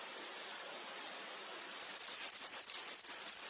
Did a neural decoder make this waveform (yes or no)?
yes